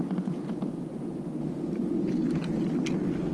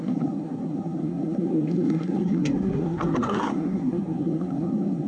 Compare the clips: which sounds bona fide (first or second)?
first